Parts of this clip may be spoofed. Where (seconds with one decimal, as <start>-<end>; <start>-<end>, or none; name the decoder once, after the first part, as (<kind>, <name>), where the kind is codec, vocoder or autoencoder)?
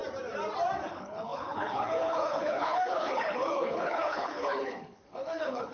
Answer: 0.9-5.7 (codec, HILCodec)